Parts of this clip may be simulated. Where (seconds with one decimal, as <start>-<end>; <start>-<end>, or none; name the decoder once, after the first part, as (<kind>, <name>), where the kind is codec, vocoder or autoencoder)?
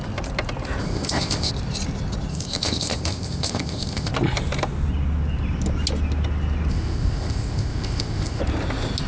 0.8-1.5 (codec, ZipCodec); 2.3-4.1; 6.7-8.4